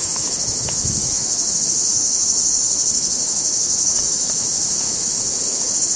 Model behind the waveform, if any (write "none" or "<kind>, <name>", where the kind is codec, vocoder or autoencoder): autoencoder, DAC-VAE